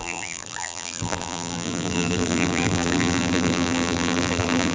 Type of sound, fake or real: fake